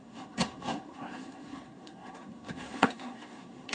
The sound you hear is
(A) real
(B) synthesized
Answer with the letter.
B